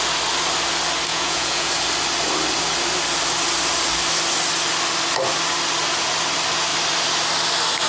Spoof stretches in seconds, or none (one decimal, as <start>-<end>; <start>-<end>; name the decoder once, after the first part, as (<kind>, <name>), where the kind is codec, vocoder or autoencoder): 1.1-1.7 (vocoder, Vocos)